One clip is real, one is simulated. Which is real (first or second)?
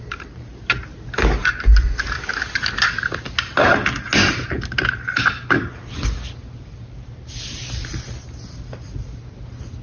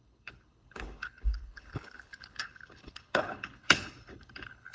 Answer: first